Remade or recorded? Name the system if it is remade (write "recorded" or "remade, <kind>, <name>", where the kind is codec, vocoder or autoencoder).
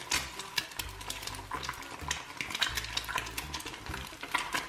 recorded